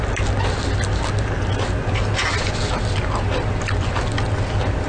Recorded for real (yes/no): yes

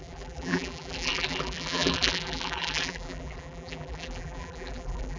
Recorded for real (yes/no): no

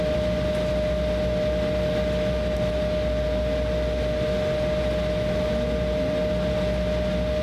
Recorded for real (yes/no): yes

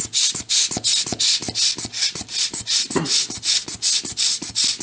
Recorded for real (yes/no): yes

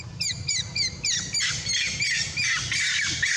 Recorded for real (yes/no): yes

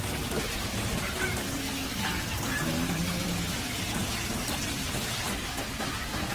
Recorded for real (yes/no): yes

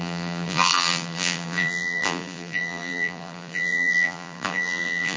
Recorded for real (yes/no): no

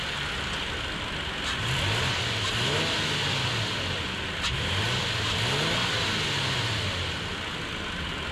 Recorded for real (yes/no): yes